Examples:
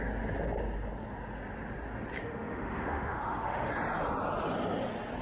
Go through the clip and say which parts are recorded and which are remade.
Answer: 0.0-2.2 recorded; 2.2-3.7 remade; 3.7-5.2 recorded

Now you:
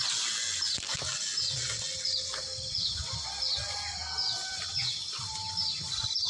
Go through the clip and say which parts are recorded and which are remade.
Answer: 0.0-6.3 recorded

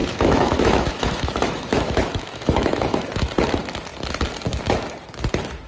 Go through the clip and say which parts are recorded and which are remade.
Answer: 0.0-3.3 remade; 3.3-5.7 recorded

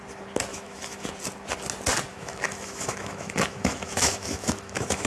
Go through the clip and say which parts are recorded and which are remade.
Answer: 0.0-0.5 recorded; 0.5-1.1 remade; 1.1-2.1 recorded; 2.1-5.1 remade